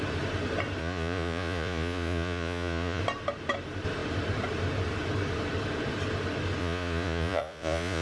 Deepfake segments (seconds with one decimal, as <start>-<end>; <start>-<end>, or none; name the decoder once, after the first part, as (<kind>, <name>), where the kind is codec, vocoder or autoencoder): 0.8-3.0 (vocoder, Vocos); 6.6-8.0